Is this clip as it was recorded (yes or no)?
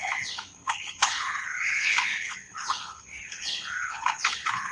no